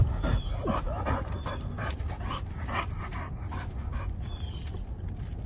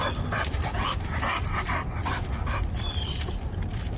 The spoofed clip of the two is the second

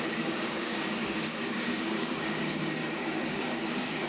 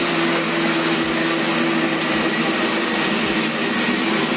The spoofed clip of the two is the first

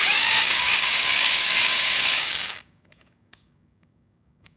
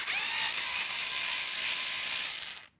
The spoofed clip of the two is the first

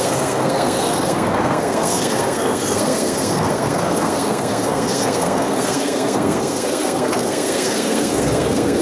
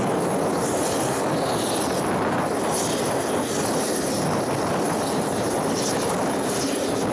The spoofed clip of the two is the first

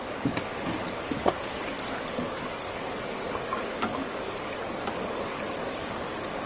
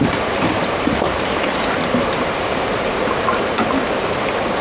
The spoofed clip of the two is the first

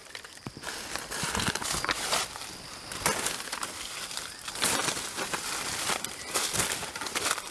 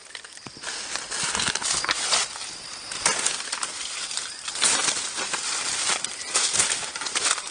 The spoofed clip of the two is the first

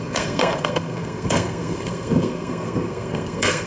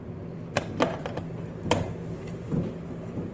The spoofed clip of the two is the first